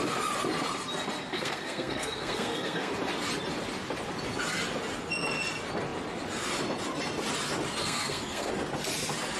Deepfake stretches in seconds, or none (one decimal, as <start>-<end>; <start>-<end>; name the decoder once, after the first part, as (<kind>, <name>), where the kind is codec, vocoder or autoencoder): 1.3-2.9 (codec, SNAC); 7.8-8.5